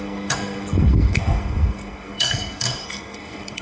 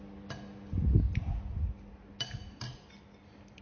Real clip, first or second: second